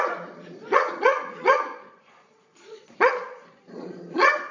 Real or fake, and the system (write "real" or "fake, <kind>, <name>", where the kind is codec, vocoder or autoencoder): fake, vocoder, Vocos